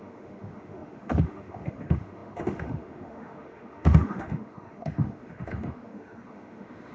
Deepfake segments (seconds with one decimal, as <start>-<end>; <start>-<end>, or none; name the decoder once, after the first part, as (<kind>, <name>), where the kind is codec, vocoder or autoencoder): 0.0-6.9 (autoencoder, DAC-VAE)

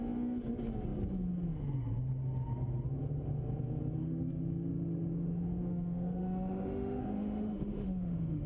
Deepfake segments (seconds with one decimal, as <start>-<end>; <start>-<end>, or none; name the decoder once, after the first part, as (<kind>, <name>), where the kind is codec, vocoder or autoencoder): 4.0-8.5 (autoencoder, DAC-VAE)

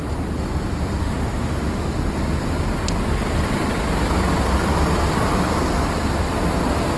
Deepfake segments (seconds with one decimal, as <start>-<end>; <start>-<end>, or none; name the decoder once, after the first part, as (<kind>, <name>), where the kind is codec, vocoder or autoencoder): 1.0-1.9 (autoencoder, DAC-VAE)

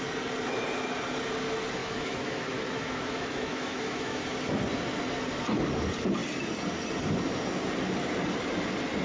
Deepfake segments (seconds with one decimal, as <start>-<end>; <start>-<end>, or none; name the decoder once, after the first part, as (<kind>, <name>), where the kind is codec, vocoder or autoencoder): 1.8-4.2 (autoencoder, DAC-VAE)

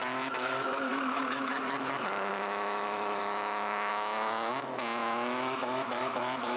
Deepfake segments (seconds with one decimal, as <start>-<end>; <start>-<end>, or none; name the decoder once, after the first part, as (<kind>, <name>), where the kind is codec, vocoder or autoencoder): 0.0-6.6 (autoencoder, DAC-VAE)